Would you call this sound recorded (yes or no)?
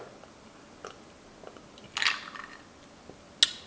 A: yes